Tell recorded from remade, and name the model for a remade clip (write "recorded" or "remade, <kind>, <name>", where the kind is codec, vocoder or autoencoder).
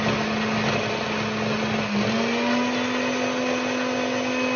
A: recorded